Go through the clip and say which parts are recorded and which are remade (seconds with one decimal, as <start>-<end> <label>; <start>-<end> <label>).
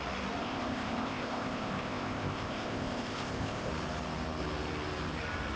0.0-0.4 recorded; 0.4-3.7 remade; 3.7-5.6 recorded